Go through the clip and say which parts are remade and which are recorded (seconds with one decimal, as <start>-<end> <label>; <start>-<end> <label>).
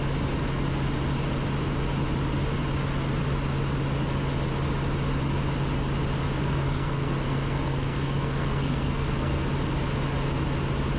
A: 0.0-6.4 recorded; 6.4-9.5 remade; 9.5-11.0 recorded